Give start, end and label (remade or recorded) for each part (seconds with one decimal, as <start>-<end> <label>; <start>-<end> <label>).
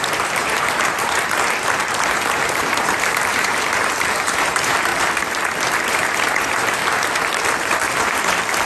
0.0-4.9 remade; 4.9-5.8 recorded; 5.8-6.8 remade; 6.8-7.6 recorded; 7.6-8.7 remade